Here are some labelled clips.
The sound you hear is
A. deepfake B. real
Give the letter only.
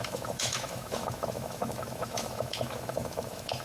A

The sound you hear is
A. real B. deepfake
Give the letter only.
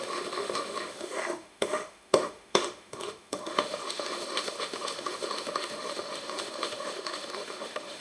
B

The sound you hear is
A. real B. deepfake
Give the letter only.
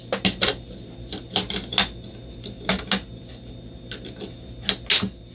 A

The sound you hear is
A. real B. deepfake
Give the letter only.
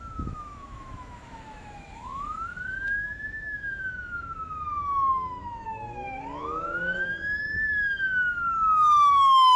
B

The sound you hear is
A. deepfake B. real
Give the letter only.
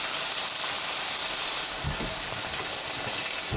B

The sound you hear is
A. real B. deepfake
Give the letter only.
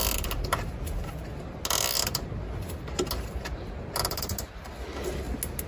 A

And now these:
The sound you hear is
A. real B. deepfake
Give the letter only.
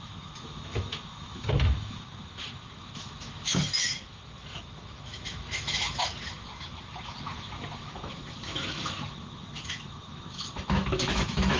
B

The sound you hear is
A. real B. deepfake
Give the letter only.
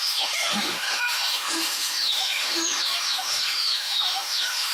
B